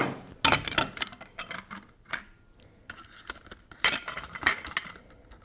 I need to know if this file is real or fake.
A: real